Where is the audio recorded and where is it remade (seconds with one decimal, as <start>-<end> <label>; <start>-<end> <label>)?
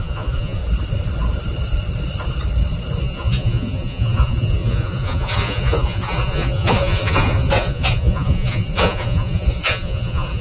0.0-0.6 remade; 0.6-3.0 recorded; 3.0-10.4 remade